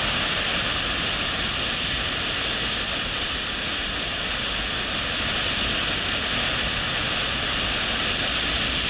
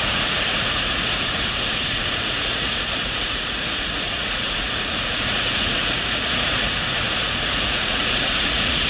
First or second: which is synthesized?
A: second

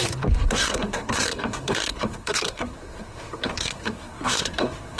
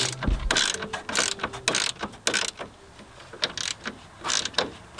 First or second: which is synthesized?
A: first